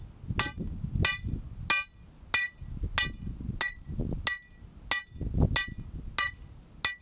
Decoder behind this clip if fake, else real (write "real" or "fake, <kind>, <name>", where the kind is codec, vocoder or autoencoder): real